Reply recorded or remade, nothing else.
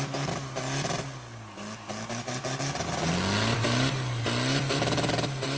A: recorded